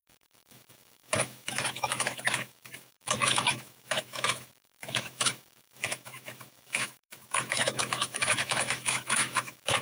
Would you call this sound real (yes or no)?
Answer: no